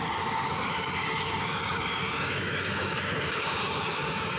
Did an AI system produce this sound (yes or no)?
yes